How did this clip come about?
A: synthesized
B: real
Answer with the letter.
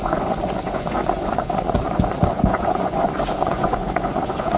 A